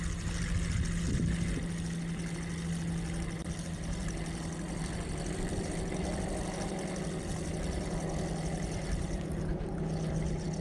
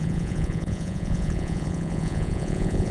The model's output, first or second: second